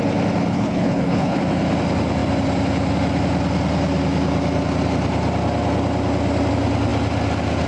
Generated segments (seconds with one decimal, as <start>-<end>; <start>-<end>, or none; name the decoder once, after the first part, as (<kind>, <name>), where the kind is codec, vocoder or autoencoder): 0.5-1.4 (codec, HILCodec)